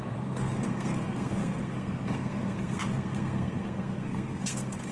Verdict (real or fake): fake